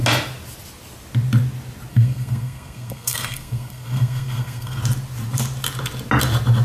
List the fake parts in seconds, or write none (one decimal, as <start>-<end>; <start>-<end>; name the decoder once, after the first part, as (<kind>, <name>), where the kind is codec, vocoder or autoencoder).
1.9-4.8 (codec, SNAC)